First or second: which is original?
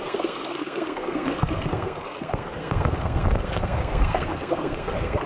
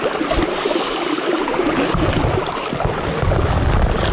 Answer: second